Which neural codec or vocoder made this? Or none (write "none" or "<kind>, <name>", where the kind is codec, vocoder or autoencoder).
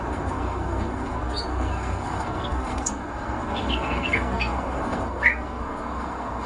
codec, SNAC